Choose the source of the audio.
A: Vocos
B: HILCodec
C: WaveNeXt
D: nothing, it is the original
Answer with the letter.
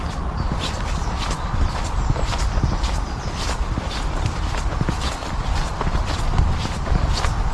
D